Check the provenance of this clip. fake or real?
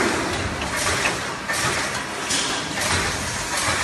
real